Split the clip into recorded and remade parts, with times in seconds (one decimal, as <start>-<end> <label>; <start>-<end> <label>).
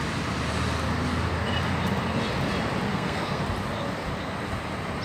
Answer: 0.0-2.9 recorded; 2.9-3.4 remade; 3.4-5.0 recorded